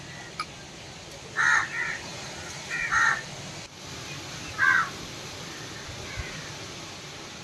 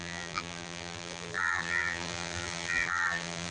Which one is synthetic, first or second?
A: second